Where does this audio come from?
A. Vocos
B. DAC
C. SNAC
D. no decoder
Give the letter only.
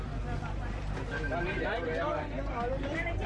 D